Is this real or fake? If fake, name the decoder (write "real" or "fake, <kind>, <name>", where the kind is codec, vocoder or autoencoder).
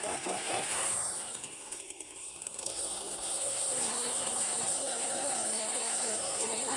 fake, codec, SNAC